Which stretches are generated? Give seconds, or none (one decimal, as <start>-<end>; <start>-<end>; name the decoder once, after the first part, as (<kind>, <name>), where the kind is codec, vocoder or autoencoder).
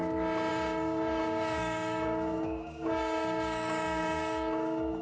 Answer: 0.5-5.0 (codec, DAC)